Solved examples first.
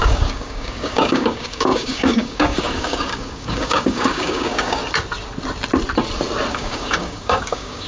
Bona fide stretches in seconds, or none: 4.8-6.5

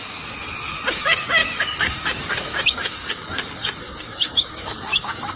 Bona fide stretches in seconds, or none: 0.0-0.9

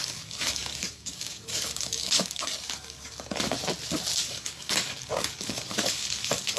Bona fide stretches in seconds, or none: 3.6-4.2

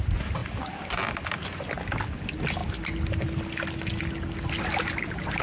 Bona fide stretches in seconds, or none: 0.0-5.4